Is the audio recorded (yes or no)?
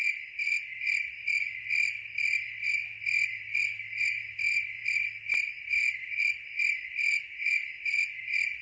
yes